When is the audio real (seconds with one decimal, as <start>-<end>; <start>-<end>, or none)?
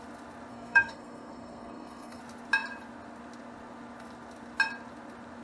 0.0-0.5; 2.2-5.4